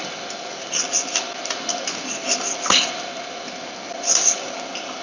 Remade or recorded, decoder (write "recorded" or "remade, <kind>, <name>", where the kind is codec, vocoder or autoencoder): recorded